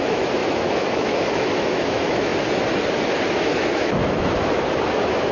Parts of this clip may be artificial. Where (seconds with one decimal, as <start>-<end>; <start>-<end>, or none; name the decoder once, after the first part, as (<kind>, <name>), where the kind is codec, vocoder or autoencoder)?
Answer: 0.0-2.3 (autoencoder, DAC-VAE); 3.3-5.3